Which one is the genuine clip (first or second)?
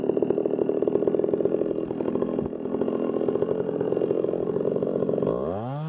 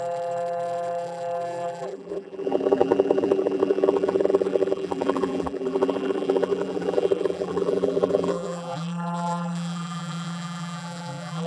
first